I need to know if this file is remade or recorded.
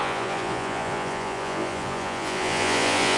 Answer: remade